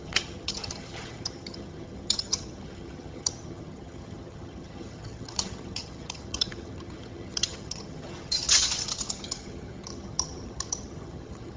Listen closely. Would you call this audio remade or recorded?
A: remade